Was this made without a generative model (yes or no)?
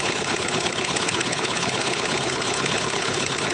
no